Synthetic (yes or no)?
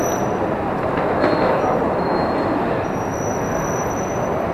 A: no